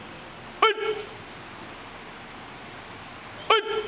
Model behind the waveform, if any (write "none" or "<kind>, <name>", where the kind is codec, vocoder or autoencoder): none